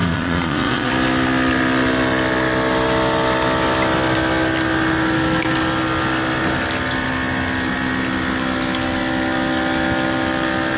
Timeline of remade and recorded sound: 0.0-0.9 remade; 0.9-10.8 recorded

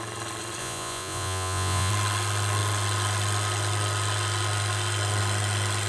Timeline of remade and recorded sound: 0.0-0.6 recorded; 0.6-1.9 remade; 1.9-5.9 recorded